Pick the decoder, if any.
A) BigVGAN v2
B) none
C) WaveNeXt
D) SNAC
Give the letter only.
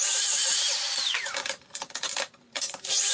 A